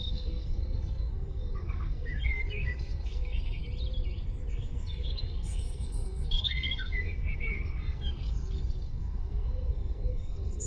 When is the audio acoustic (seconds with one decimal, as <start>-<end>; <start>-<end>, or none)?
3.6-4.5